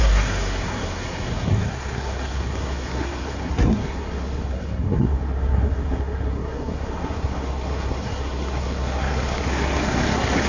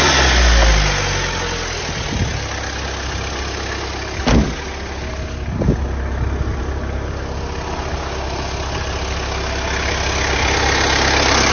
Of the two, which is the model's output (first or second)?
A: first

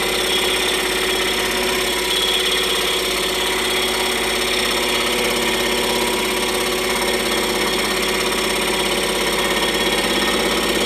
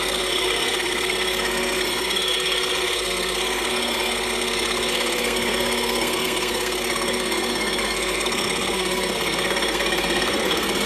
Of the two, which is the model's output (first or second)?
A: second